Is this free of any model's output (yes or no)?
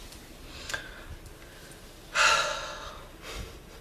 yes